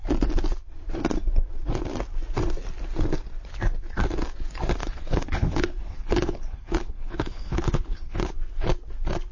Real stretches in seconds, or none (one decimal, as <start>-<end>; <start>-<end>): 0.0-4.8; 8.3-9.3